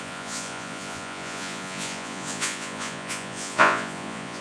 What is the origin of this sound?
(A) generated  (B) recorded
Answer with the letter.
A